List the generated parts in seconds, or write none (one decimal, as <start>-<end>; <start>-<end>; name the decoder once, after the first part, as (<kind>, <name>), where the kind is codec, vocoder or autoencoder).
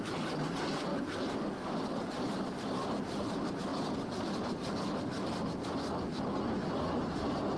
none